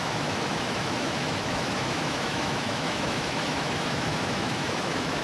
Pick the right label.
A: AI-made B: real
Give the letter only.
A